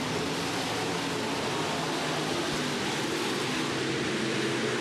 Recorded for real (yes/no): yes